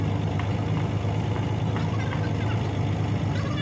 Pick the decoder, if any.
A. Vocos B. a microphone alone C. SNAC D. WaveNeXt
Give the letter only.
B